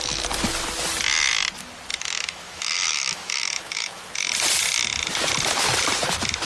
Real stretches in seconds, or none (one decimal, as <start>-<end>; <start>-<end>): 0.0-1.9; 4.1-6.5